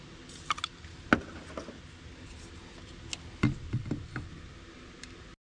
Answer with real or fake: real